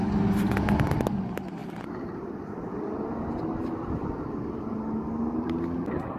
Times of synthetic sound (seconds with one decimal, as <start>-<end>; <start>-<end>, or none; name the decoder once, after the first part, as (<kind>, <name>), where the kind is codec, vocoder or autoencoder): none